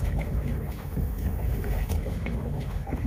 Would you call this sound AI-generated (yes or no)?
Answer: yes